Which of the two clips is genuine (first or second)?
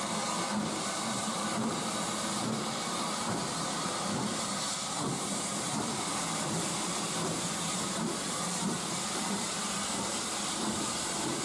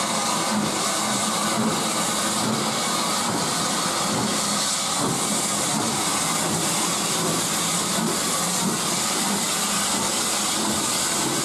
second